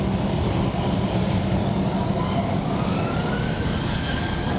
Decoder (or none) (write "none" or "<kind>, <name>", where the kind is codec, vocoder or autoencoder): codec, DAC